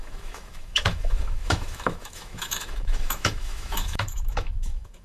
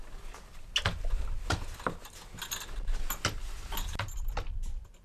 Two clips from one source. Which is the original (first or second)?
second